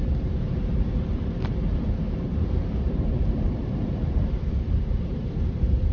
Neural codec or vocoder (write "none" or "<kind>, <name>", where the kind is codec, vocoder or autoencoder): vocoder, BigVGAN v2